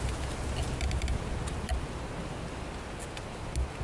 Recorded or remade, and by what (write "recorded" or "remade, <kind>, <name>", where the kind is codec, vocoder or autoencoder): recorded